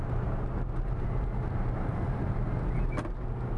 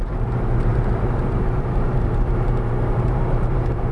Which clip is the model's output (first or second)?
second